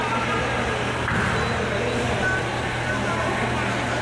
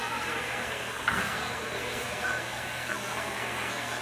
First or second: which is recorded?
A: first